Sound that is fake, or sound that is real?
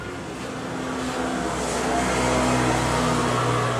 real